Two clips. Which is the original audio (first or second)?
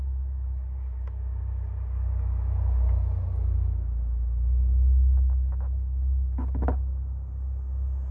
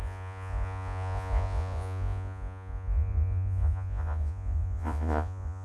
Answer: first